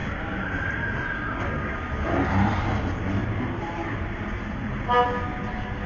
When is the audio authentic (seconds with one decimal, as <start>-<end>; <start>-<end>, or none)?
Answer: 0.0-3.2; 4.2-5.9